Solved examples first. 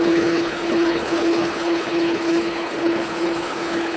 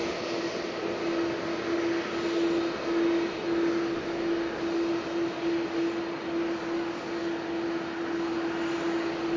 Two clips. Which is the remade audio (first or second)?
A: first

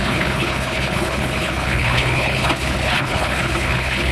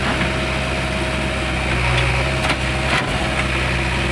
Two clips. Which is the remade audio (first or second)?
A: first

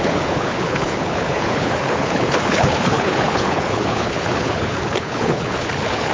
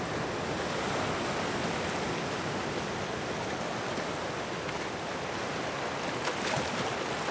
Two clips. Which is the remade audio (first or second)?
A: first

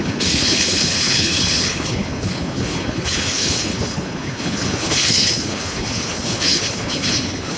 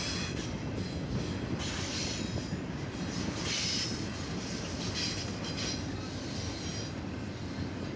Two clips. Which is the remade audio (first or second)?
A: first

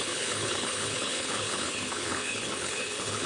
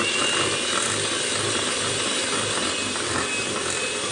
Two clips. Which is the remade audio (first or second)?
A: first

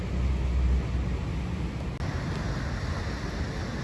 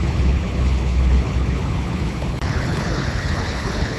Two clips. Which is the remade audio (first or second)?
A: second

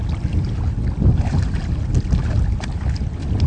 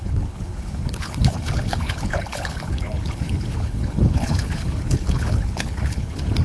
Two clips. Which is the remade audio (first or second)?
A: second